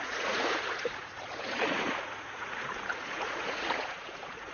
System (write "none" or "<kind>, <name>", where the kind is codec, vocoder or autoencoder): vocoder, Vocos